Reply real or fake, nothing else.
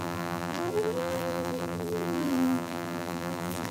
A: fake